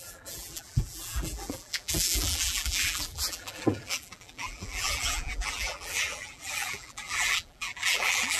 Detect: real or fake fake